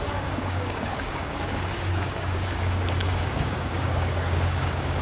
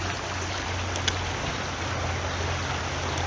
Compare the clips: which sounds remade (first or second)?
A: first